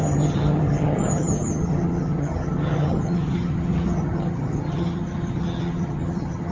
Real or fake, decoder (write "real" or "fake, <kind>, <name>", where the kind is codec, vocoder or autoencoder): fake, vocoder, HiFi-GAN